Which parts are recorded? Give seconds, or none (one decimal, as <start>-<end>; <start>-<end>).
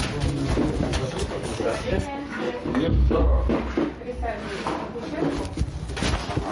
0.0-0.9; 3.2-6.5